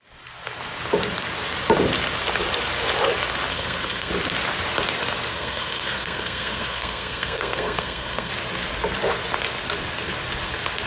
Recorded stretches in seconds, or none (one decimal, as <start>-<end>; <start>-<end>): 0.0-3.5; 4.1-5.3; 8.3-10.9